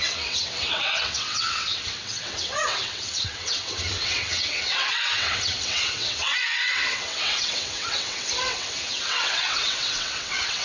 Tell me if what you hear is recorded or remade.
remade